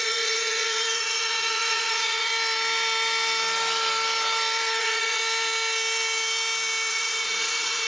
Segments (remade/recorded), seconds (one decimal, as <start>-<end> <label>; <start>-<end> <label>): 0.0-2.3 remade; 2.3-4.8 recorded; 4.8-5.2 remade; 5.2-6.9 recorded; 6.9-7.9 remade